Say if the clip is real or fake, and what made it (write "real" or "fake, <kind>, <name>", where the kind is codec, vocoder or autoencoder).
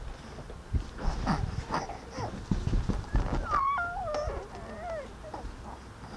real